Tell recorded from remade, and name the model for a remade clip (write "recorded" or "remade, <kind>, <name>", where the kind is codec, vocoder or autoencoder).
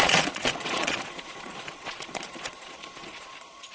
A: remade, vocoder, Vocos